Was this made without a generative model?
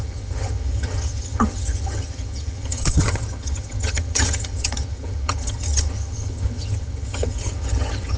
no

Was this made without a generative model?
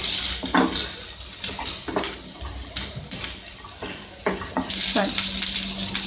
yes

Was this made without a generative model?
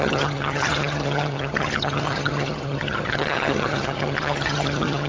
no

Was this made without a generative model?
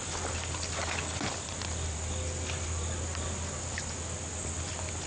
yes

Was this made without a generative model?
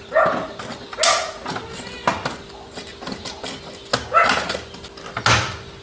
yes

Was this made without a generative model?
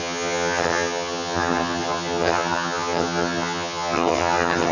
no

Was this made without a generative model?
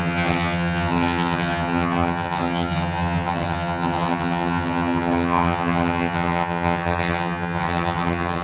no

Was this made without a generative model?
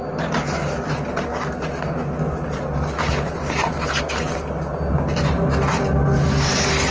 yes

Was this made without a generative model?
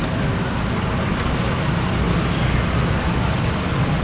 yes